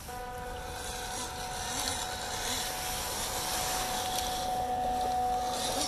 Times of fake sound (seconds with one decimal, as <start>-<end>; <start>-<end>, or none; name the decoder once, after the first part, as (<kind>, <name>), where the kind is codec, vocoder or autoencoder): none